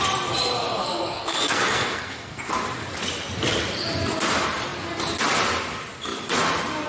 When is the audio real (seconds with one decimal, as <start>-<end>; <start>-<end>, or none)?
0.0-0.8; 2.5-6.9

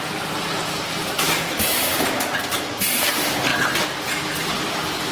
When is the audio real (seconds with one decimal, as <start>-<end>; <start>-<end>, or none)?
3.5-4.5